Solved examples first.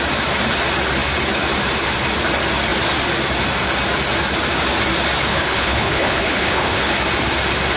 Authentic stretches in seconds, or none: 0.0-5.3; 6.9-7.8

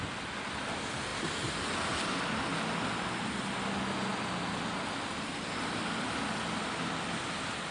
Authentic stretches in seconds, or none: 0.0-7.7